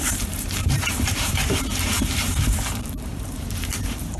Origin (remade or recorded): remade